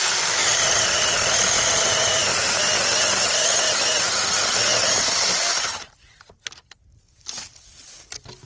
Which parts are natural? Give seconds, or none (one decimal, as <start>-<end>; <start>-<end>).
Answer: 0.0-0.4; 0.9-8.5

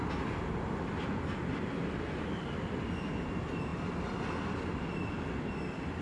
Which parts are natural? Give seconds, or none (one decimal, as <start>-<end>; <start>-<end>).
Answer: 0.0-6.0

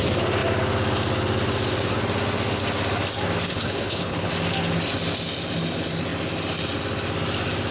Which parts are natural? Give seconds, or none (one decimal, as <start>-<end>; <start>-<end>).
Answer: 0.0-3.5; 4.3-7.7

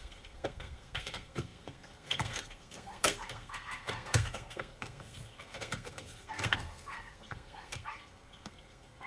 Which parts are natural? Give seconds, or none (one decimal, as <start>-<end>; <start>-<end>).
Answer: none

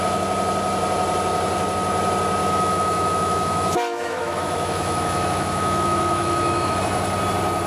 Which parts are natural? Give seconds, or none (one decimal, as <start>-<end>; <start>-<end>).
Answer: 0.0-2.4; 6.8-7.7

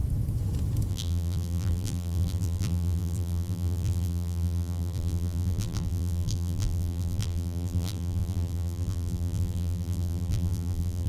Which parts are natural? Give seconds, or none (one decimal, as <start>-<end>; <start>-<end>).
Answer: 0.0-0.9

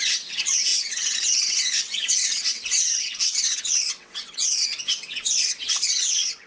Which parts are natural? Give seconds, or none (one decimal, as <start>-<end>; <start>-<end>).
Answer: none